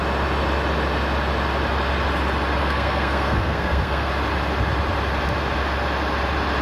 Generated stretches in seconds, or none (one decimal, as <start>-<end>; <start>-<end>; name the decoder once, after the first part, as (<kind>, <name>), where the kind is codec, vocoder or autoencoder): 2.6-4.1 (codec, SNAC)